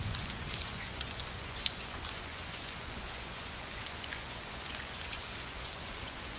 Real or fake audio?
fake